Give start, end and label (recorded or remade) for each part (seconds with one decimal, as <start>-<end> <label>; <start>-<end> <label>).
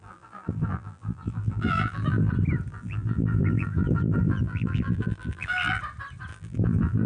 0.0-2.3 remade; 2.3-2.7 recorded; 2.7-5.8 remade; 5.8-6.3 recorded; 6.3-7.1 remade